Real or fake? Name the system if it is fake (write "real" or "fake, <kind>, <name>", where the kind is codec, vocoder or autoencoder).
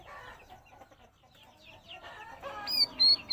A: real